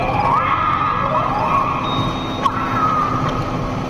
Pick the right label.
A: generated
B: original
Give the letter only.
B